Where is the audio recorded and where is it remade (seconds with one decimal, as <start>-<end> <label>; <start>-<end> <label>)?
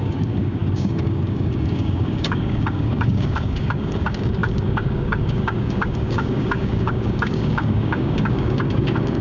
0.0-9.2 remade